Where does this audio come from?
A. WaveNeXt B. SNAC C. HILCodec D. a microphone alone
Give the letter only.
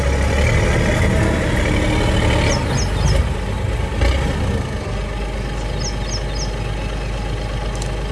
D